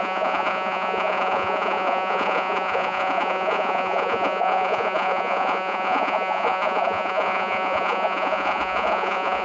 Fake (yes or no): yes